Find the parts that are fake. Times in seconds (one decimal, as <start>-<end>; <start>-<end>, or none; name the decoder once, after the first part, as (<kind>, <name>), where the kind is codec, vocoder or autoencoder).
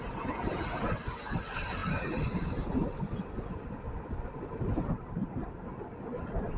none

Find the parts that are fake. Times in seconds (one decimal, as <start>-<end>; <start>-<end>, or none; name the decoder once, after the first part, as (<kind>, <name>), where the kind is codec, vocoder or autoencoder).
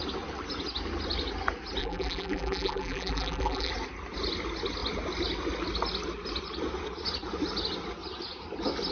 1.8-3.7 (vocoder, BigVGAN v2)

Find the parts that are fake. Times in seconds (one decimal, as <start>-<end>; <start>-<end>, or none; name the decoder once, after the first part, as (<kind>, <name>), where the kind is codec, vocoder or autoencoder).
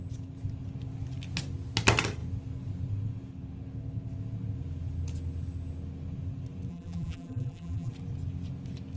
6.7-7.9 (vocoder, BigVGAN v2)